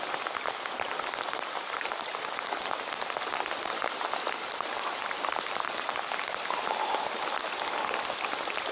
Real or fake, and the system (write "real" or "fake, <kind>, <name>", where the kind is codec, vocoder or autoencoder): real